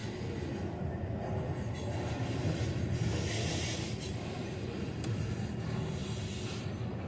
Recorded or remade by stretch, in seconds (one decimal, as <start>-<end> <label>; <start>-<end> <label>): 0.0-7.1 recorded